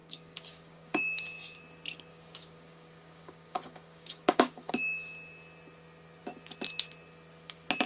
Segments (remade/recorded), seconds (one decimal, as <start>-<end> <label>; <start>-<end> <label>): 0.0-1.6 remade; 1.6-2.1 recorded; 2.1-4.7 remade; 4.7-7.9 recorded